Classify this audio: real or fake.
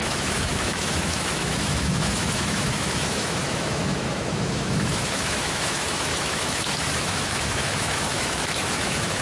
fake